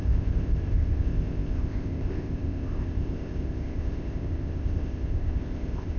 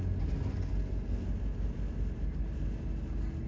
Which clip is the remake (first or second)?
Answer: first